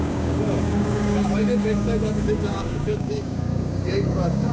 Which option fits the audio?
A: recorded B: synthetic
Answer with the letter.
B